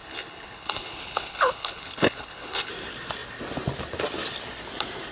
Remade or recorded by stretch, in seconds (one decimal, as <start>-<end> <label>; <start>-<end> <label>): 0.0-2.7 remade; 2.7-5.1 recorded